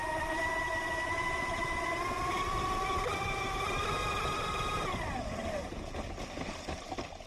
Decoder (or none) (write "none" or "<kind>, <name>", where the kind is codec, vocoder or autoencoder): vocoder, BigVGAN v2